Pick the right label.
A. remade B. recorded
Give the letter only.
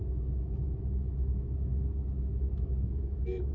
A